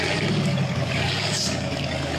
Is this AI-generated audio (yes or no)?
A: yes